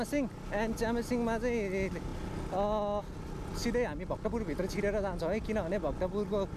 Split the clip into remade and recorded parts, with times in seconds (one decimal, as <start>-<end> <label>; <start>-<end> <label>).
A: 0.0-6.6 recorded